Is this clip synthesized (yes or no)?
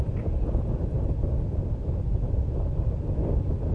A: no